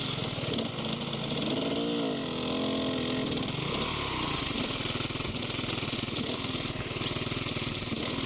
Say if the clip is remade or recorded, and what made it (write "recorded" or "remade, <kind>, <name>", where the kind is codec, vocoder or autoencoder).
recorded